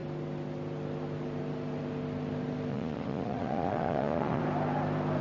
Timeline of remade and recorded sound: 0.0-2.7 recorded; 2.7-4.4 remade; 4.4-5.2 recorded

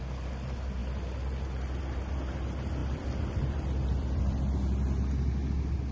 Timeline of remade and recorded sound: 0.0-2.8 recorded; 2.8-4.4 remade; 4.4-5.9 recorded